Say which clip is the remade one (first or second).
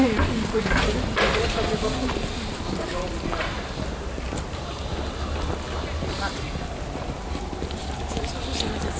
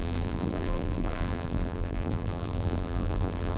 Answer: second